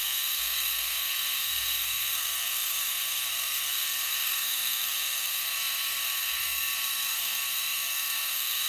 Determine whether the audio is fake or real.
fake